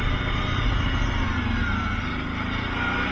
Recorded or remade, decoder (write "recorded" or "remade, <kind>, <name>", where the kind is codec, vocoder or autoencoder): recorded